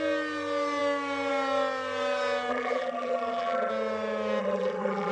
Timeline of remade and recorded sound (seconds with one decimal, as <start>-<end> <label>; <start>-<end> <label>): 0.0-2.5 recorded; 2.5-3.7 remade; 3.7-4.4 recorded; 4.4-5.1 remade